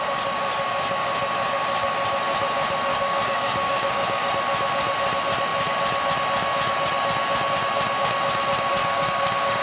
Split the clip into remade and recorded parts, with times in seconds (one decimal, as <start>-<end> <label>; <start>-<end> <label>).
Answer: 0.0-2.9 recorded; 2.9-4.3 remade; 4.3-8.8 recorded; 8.8-9.6 remade